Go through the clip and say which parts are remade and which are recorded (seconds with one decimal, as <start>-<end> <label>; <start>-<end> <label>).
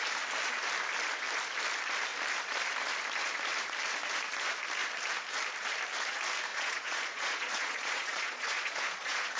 0.0-6.5 recorded; 6.5-9.4 remade